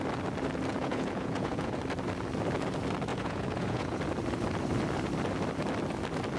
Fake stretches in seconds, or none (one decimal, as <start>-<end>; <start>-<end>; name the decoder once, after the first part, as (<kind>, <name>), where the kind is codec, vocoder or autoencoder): 0.7-1.8 (vocoder, Vocos); 3.1-4.0